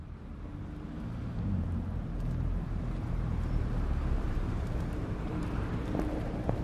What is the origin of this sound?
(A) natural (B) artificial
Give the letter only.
B